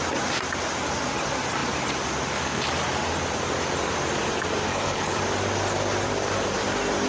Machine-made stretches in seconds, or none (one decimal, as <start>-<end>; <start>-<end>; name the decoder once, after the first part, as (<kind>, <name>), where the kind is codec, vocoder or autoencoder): 4.7-5.2 (codec, HILCodec)